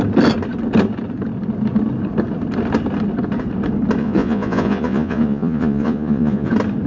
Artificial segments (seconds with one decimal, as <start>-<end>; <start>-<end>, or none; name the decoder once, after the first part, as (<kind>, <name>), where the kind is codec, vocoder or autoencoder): 4.0-6.5 (vocoder, Vocos)